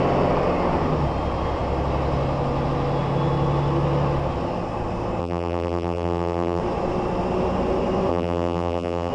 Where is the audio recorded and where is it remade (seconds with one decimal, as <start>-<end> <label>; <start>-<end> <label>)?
0.0-5.2 recorded; 5.2-6.6 remade; 6.6-8.1 recorded; 8.1-9.1 remade